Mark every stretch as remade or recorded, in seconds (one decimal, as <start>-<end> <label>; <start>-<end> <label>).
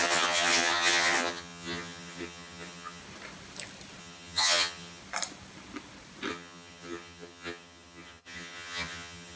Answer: 0.0-3.0 remade; 3.0-4.0 recorded; 4.0-5.0 remade; 5.0-6.3 recorded; 6.3-9.4 remade